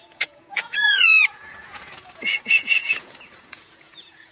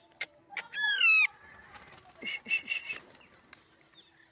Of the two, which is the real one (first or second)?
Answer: second